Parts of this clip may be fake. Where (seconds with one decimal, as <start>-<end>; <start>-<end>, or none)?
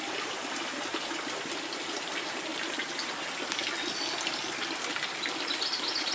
none